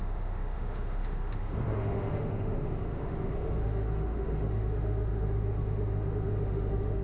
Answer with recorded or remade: remade